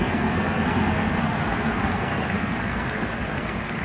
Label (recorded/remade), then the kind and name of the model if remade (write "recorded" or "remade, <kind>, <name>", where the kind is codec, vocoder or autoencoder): remade, codec, SNAC